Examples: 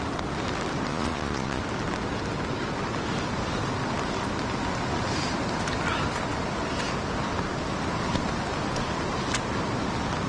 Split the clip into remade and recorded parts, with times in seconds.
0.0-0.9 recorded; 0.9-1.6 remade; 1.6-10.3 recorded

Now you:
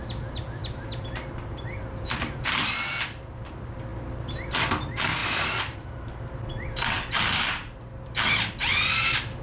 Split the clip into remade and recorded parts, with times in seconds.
0.0-9.4 recorded

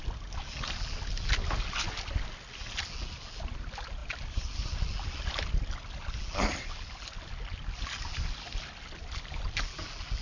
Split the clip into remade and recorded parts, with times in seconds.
0.0-4.0 recorded; 4.0-4.7 remade; 4.7-10.2 recorded

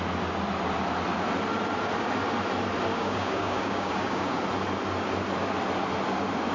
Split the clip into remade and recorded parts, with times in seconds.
0.0-2.9 recorded; 2.9-4.4 remade; 4.4-6.5 recorded

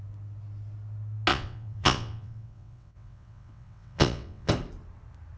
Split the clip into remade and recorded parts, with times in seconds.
0.0-1.3 recorded; 1.3-4.5 remade; 4.5-5.4 recorded

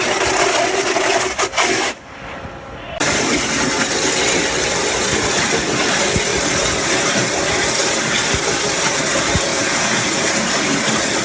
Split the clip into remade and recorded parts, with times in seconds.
0.0-9.5 recorded; 9.5-10.2 remade; 10.2-11.2 recorded

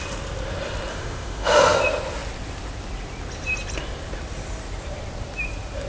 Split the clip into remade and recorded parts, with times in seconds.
0.0-0.9 recorded; 0.9-1.8 remade; 1.8-5.9 recorded